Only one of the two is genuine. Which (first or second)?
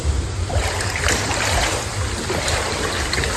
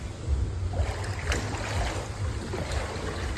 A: second